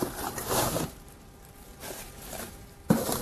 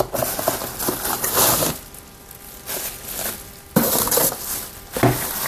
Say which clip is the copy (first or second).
first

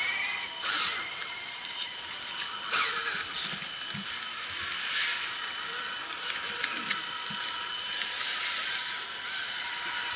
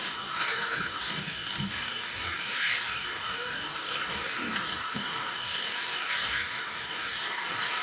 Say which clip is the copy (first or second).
second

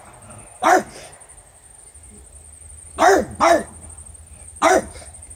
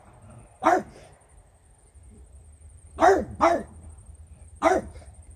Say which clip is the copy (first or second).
second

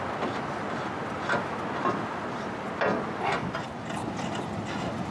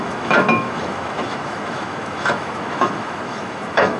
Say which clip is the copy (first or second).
second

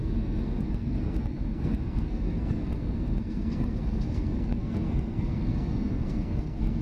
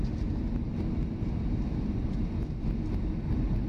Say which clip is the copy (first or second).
first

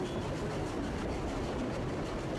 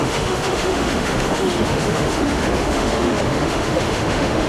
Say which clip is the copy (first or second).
second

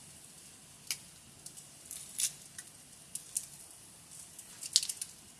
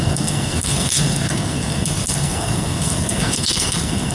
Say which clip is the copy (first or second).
second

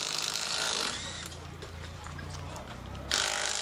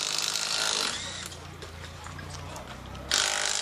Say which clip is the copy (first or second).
first